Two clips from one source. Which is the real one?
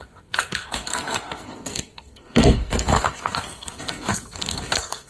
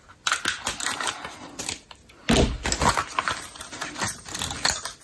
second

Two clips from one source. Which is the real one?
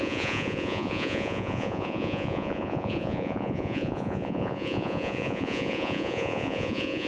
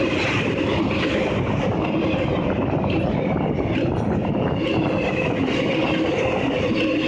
second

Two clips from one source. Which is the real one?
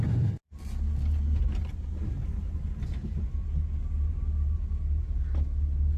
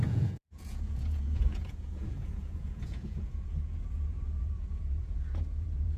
first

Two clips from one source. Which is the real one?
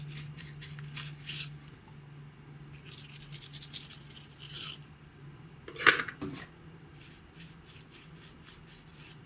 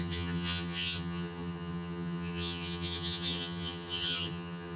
first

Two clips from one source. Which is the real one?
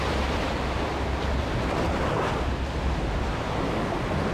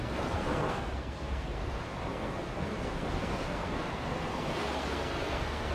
first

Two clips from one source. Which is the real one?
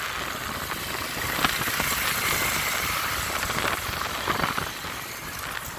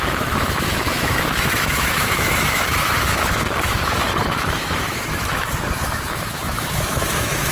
first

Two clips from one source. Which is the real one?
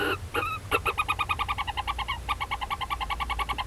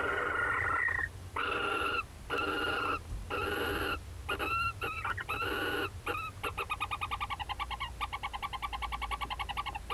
second